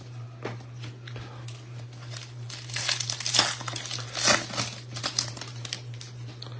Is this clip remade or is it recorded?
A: recorded